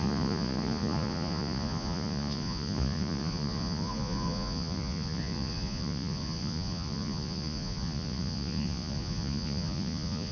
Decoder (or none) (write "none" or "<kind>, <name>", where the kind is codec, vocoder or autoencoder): vocoder, Vocos